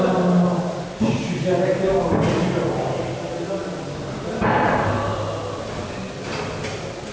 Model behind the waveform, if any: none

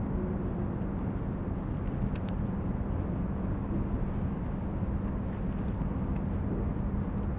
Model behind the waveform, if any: none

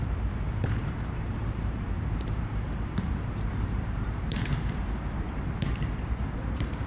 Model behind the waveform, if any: vocoder, BigVGAN v2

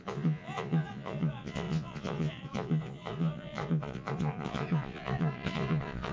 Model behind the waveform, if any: vocoder, Vocos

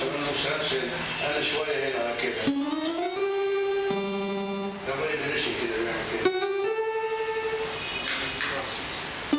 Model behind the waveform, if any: none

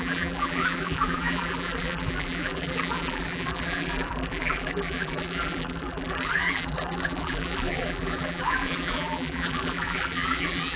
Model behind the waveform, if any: vocoder, BigVGAN v2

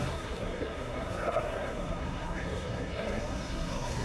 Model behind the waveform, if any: codec, SNAC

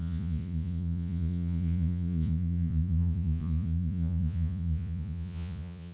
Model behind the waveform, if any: vocoder, Vocos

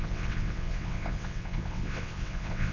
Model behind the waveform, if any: vocoder, WaveNeXt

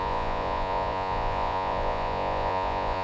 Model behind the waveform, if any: vocoder, Vocos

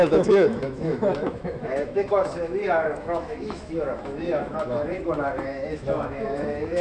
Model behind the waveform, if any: autoencoder, DAC-VAE